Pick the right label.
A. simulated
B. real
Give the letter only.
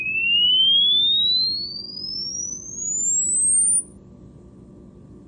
B